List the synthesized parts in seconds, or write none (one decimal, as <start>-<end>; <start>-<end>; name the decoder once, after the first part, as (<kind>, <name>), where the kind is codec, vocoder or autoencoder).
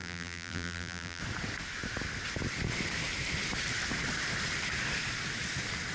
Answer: 0.0-1.2 (vocoder, BigVGAN v2)